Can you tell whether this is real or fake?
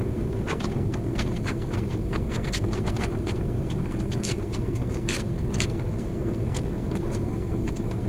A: fake